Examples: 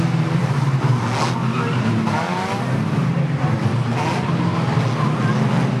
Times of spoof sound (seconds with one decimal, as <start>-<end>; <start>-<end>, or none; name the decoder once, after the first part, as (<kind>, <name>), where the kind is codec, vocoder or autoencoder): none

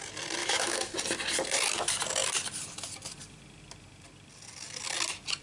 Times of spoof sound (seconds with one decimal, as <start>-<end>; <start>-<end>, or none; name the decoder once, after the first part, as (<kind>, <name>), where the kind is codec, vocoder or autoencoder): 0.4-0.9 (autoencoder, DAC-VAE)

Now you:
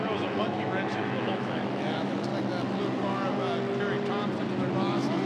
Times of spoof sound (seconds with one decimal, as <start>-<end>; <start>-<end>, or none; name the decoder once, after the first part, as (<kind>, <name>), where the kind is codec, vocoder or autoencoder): 0.0-2.3 (autoencoder, DAC-VAE); 4.7-5.3

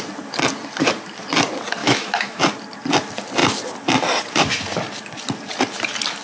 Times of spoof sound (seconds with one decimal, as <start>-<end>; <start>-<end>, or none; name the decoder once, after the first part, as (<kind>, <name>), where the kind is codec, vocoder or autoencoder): 1.8-2.4 (autoencoder, DAC-VAE)

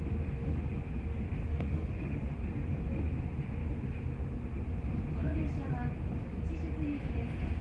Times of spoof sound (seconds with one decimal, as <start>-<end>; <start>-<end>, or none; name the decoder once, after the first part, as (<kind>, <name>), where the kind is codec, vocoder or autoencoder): 1.4-2.4 (autoencoder, DAC-VAE)